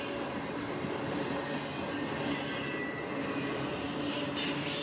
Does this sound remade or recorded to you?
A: recorded